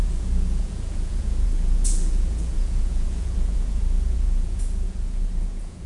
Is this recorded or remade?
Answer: remade